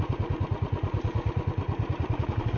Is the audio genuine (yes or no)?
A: no